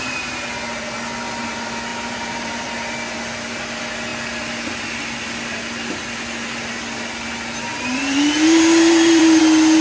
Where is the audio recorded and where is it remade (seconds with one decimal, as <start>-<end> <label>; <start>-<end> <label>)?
0.0-1.9 recorded; 1.9-2.7 remade; 2.7-7.7 recorded; 7.7-9.4 remade; 9.4-9.8 recorded